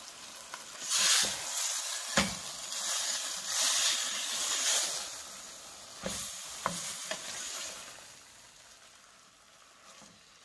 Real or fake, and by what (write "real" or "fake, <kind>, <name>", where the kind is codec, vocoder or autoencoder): real